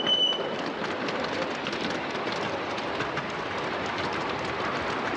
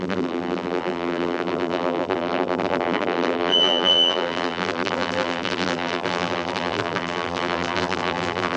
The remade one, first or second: second